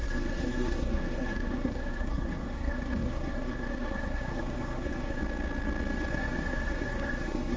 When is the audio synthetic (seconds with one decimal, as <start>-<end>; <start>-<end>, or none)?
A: 0.0-5.2; 6.1-7.6